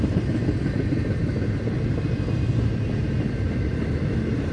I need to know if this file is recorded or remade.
recorded